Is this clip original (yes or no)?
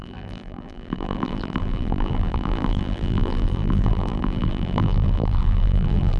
no